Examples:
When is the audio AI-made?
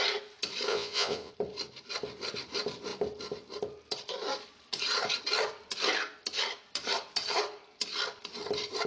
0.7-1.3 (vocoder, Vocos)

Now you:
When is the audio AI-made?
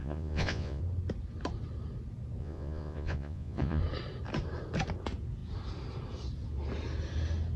0.0-0.8 (vocoder, Vocos); 2.4-3.8